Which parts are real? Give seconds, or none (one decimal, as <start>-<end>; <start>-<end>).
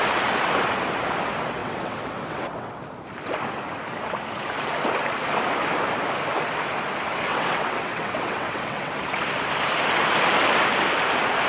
0.0-1.6; 2.8-7.3; 8.9-11.5